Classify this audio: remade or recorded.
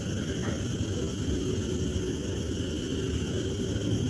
recorded